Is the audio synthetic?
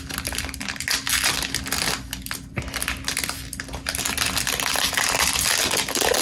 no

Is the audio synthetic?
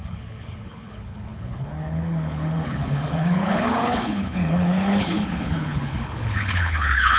yes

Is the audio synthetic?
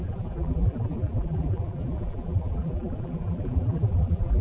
yes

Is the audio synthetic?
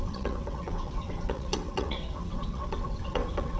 yes